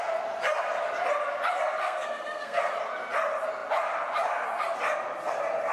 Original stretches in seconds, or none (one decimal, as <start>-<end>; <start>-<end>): 0.0-1.8; 2.7-5.7